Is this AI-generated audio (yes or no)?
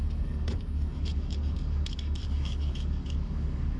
yes